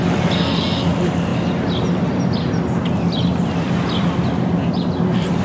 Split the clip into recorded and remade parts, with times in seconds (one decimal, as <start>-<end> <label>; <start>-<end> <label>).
0.0-5.4 recorded